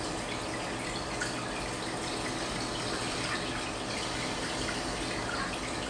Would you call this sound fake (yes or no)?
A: no